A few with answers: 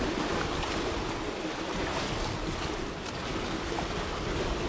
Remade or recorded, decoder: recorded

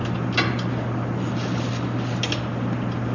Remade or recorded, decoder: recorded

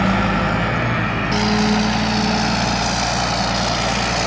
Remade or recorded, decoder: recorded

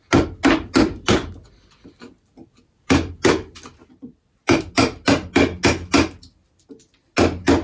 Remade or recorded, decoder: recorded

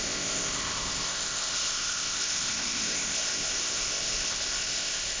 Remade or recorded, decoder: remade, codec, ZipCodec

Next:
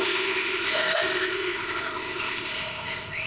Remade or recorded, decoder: remade, codec, ZipCodec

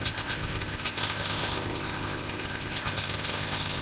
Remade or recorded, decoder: remade, codec, ZipCodec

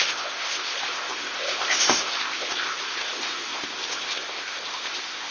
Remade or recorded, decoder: remade, codec, ZipCodec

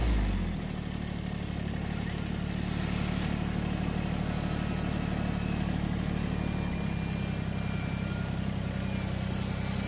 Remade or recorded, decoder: recorded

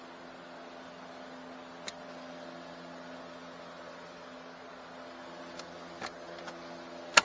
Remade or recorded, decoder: recorded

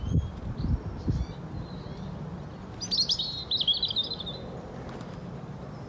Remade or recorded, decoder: recorded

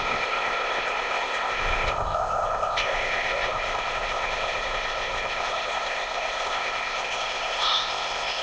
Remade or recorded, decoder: remade, codec, ZipCodec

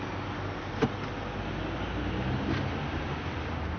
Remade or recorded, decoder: recorded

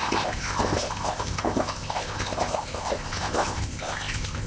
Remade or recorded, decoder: remade, codec, ZipCodec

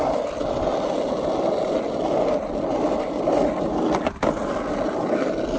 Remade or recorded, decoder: recorded